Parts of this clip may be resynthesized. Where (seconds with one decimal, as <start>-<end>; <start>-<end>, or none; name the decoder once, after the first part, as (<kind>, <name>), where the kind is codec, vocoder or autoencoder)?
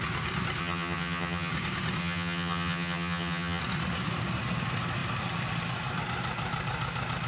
0.6-1.5 (vocoder, HiFi-GAN); 2.0-3.6